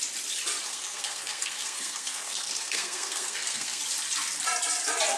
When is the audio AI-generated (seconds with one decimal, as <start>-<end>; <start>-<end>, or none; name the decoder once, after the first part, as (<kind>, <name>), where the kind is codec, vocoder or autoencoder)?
0.7-3.8 (codec, SNAC)